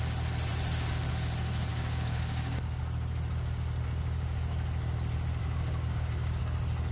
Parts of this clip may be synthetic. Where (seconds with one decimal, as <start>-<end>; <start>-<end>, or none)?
1.7-2.8; 5.4-6.4